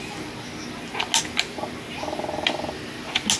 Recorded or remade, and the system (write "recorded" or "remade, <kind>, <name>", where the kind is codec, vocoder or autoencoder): recorded